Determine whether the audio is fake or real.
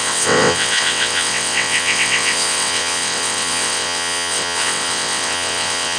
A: fake